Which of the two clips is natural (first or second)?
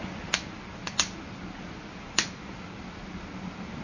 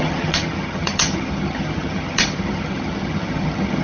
first